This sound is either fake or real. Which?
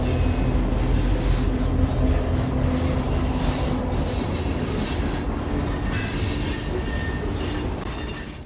real